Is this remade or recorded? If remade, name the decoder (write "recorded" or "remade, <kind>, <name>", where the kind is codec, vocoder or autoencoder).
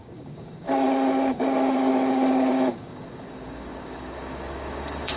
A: remade, codec, DAC